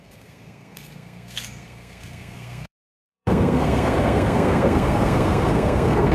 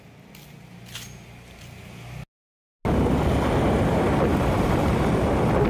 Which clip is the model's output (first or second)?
first